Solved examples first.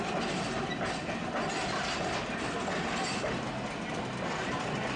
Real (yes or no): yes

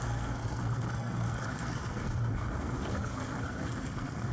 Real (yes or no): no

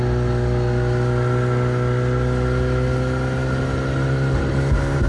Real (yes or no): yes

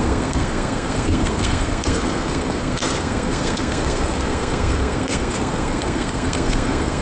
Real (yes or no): no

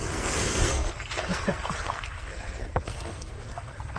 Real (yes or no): no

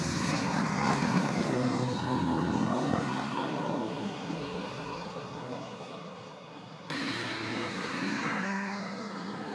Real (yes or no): no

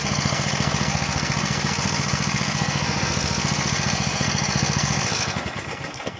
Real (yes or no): no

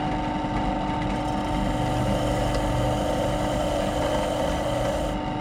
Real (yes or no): yes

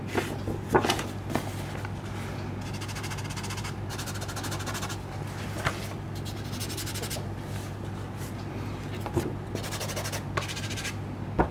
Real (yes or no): yes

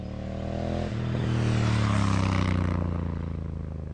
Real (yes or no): yes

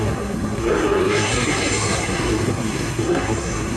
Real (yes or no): no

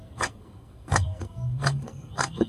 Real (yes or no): no